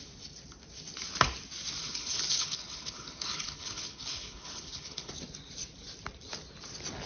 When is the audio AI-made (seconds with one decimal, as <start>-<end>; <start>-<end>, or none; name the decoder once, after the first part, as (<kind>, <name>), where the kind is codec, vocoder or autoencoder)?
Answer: 1.8-5.1 (codec, HILCodec)